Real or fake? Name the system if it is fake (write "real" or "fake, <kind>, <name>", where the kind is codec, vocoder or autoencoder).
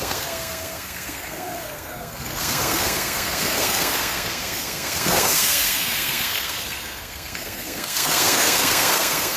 fake, codec, SNAC